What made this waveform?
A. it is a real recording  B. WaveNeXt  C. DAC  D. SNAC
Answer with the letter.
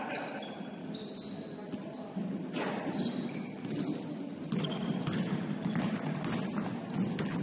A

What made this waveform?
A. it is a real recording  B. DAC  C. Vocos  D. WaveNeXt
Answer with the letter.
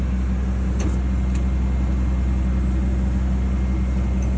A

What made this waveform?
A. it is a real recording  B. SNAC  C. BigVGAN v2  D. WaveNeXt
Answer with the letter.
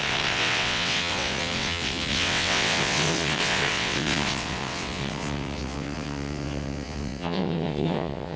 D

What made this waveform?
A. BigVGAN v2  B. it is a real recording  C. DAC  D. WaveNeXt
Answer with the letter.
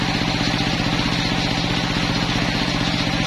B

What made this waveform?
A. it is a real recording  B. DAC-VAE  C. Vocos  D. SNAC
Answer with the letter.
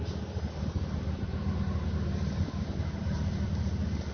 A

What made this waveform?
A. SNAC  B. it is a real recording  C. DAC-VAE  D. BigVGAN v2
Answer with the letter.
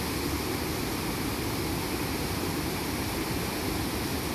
B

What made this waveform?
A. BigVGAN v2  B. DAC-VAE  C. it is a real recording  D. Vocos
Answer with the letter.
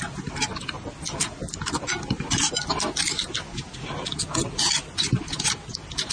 C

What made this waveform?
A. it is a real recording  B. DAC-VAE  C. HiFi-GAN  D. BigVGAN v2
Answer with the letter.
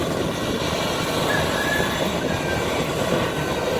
A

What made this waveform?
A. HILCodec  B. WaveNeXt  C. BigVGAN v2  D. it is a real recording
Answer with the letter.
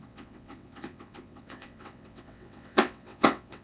B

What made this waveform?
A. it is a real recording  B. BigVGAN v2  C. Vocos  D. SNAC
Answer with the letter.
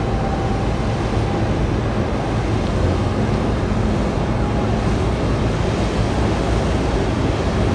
A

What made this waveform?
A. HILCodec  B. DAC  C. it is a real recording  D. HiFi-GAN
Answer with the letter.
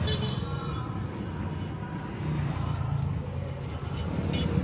C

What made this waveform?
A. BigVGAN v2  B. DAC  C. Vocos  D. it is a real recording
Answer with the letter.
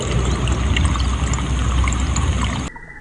D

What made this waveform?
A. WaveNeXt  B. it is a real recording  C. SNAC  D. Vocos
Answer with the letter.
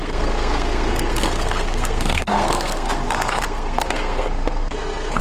C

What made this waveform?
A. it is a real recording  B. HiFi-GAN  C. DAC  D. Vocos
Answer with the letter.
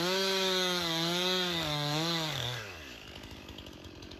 C